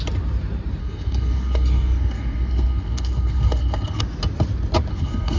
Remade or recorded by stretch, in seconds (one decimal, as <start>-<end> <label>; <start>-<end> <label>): 0.0-0.8 recorded; 0.8-4.0 remade; 4.0-4.9 recorded; 4.9-5.4 remade